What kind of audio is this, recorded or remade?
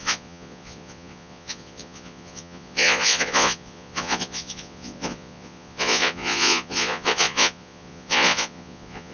remade